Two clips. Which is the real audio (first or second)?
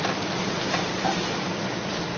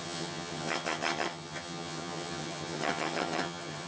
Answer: first